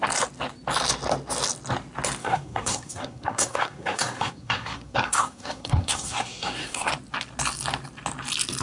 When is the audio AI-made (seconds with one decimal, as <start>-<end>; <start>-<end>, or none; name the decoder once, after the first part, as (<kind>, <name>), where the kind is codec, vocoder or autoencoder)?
2.2-6.9 (codec, SNAC)